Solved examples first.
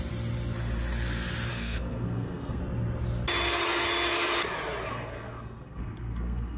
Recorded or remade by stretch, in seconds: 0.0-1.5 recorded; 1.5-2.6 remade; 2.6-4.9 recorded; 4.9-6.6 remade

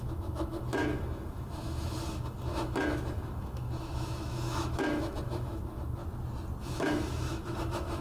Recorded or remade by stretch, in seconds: 0.0-6.0 remade; 6.0-6.6 recorded; 6.6-8.0 remade

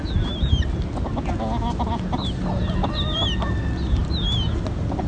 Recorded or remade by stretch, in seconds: 0.0-5.1 recorded

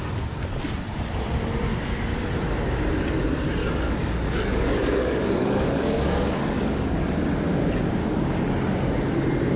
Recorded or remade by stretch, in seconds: 0.0-3.6 recorded; 3.6-7.0 remade; 7.0-8.0 recorded; 8.0-8.5 remade; 8.5-9.6 recorded